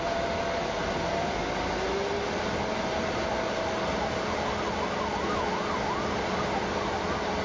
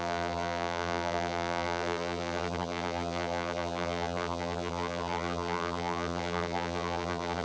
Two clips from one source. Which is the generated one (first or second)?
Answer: second